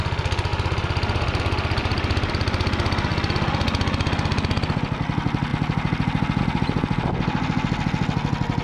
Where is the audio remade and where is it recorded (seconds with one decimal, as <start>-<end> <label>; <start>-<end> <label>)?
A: 0.0-0.5 recorded; 0.5-1.4 remade; 1.4-1.8 recorded; 1.8-2.3 remade; 2.3-8.6 recorded